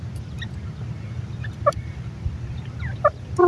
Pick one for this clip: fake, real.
real